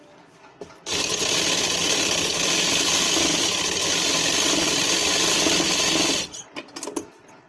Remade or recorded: recorded